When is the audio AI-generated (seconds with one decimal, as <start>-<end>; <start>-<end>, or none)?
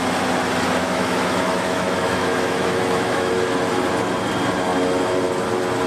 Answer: 0.8-3.3